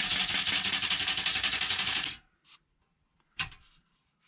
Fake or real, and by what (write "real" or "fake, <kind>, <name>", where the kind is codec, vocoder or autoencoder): real